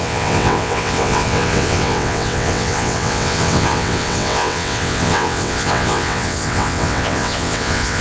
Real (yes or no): no